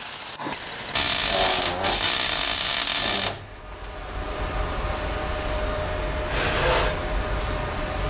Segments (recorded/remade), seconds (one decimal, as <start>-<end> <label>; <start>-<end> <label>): 0.0-8.1 recorded